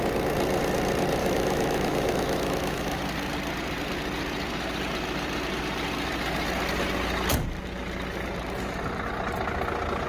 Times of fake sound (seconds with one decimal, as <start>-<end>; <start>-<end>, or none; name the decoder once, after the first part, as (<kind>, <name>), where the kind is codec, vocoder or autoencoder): 1.2-3.0 (autoencoder, DAC-VAE)